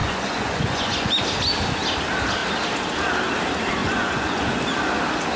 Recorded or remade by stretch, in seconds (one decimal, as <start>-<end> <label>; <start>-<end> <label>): 0.0-1.1 remade; 1.1-3.8 recorded; 3.8-4.6 remade; 4.6-5.4 recorded

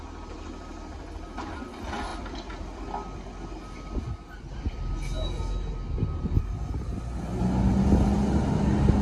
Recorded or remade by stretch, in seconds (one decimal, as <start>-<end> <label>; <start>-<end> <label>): 0.0-9.0 recorded

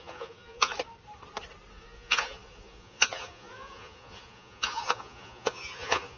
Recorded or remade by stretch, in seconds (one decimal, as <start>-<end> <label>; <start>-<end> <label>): 0.0-0.7 remade; 0.7-1.7 recorded; 1.7-6.2 remade

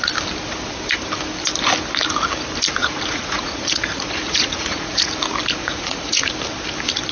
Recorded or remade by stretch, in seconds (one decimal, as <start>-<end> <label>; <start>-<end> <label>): 0.0-2.8 recorded; 2.8-5.1 remade; 5.1-5.6 recorded; 5.6-6.3 remade; 6.3-7.1 recorded

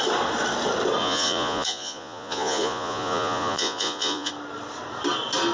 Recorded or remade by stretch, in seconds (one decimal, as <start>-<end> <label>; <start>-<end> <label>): 0.0-1.0 recorded; 1.0-4.3 remade; 4.3-5.5 recorded

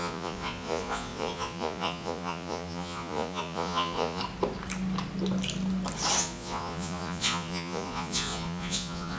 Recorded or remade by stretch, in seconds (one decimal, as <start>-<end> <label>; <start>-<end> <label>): 0.0-4.2 remade; 4.2-6.2 recorded; 6.2-9.2 remade